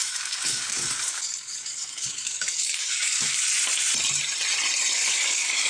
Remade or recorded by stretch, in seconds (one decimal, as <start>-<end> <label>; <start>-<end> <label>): 0.0-3.4 remade; 3.4-4.9 recorded; 4.9-5.7 remade